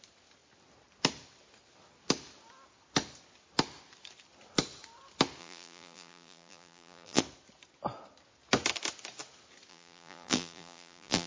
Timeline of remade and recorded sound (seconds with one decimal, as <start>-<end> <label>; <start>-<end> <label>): 0.0-5.4 recorded; 5.4-7.2 remade; 7.2-9.7 recorded; 9.7-11.3 remade